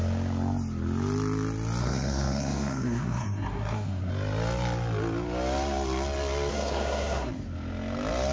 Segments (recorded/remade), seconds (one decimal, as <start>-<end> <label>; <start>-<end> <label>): 0.0-1.8 recorded; 1.8-4.1 remade; 4.1-6.5 recorded; 6.5-7.3 remade; 7.3-8.3 recorded